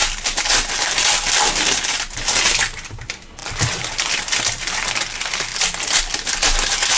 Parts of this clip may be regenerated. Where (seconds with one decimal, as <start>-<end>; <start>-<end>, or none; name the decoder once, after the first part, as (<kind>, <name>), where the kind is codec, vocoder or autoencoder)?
none